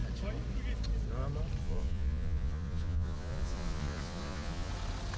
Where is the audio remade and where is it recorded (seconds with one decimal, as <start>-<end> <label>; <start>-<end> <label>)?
0.0-1.6 recorded; 1.6-4.7 remade; 4.7-5.2 recorded

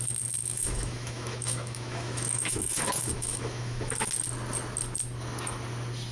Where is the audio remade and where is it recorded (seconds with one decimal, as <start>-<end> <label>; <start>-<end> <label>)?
0.0-0.4 recorded; 0.4-4.1 remade; 4.1-6.1 recorded